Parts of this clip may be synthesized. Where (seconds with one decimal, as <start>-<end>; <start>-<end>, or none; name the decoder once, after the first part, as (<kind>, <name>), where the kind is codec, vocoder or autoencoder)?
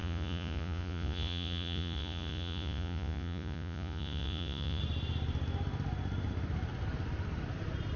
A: 0.0-4.8 (vocoder, Vocos)